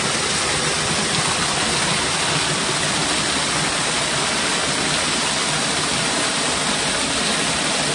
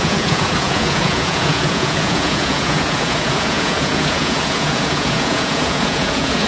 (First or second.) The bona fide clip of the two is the first